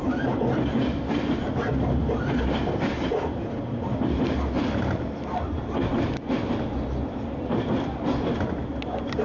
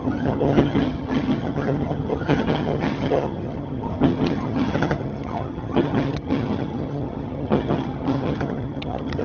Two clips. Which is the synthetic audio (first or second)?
second